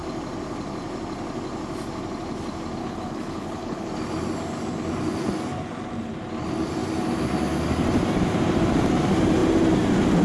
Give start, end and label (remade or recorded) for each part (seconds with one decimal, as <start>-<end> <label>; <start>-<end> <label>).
0.0-2.8 recorded; 2.8-3.9 remade; 3.9-10.2 recorded